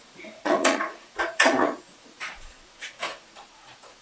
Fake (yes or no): yes